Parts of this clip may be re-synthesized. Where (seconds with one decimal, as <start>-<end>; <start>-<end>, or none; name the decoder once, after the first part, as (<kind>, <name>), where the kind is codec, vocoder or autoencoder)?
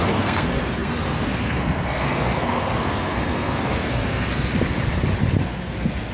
0.0-4.5 (codec, SNAC); 5.4-6.1